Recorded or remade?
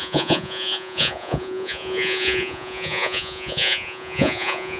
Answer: remade